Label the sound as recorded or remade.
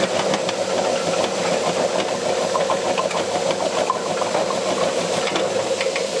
recorded